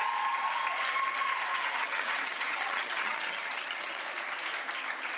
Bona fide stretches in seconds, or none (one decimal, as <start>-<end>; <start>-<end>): 0.0-1.5; 4.0-5.2